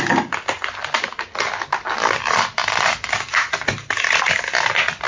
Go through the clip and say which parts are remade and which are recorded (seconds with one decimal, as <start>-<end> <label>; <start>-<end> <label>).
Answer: 0.0-5.1 recorded